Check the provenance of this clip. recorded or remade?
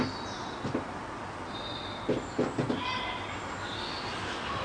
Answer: recorded